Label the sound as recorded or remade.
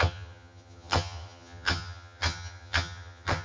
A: remade